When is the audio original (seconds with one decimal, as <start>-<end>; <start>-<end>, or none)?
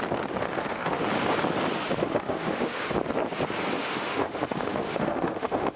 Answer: 0.0-0.4; 1.0-2.0; 2.9-3.8